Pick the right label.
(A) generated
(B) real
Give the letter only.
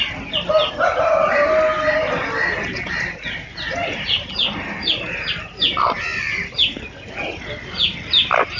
B